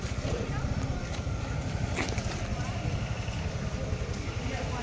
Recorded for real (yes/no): yes